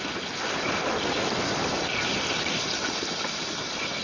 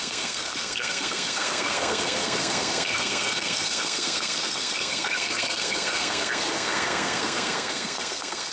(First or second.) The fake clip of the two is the second